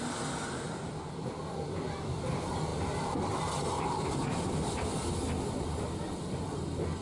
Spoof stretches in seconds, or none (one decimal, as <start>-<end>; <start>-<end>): none